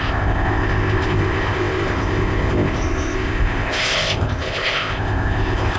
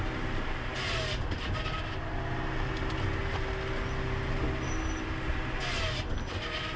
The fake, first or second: first